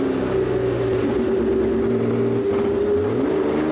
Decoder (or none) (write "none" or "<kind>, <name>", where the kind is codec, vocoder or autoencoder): none